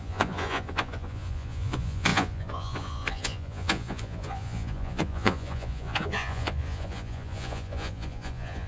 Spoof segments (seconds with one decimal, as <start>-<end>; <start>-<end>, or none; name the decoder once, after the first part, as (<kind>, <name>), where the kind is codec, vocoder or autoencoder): 0.0-8.7 (vocoder, Vocos)